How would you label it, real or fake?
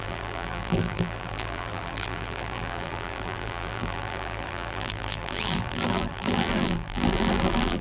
fake